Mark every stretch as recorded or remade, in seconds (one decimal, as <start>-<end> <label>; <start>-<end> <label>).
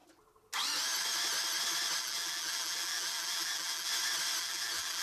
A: 0.0-2.0 recorded; 2.0-3.9 remade; 3.9-4.4 recorded; 4.4-5.0 remade